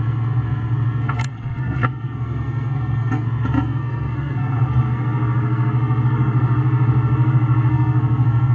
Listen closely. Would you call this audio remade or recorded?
remade